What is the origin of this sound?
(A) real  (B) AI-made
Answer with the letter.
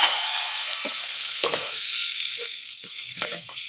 B